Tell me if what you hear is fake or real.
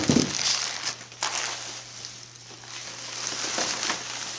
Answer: real